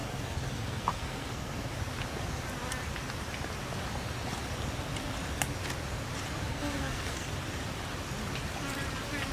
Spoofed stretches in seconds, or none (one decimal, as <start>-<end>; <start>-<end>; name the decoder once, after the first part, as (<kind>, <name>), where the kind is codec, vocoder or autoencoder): 0.0-1.7 (codec, SNAC); 6.5-7.3